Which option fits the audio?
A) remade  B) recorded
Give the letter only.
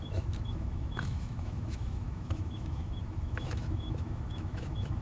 A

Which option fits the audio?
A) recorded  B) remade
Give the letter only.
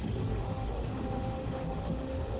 B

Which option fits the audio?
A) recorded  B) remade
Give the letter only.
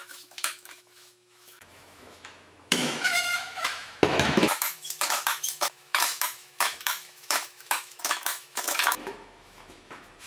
B